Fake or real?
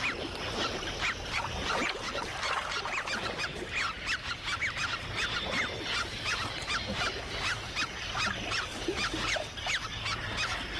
real